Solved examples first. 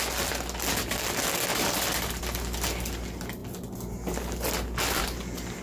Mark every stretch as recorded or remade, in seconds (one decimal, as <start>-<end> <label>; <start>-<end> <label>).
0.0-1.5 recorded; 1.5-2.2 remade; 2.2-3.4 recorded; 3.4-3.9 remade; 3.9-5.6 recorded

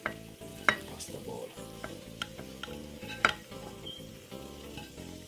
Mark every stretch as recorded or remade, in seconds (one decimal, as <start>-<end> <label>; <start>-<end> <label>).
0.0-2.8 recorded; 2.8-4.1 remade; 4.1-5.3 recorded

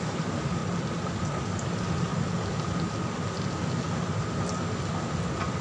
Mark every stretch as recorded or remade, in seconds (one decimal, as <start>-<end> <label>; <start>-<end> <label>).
0.0-0.6 remade; 0.6-1.4 recorded; 1.4-2.1 remade; 2.1-5.6 recorded

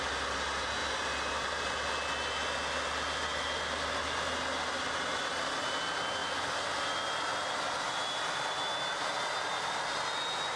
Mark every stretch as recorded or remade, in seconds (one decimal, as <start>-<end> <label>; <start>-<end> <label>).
0.0-0.8 recorded; 0.8-1.6 remade; 1.6-10.6 recorded